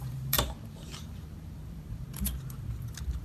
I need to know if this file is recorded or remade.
remade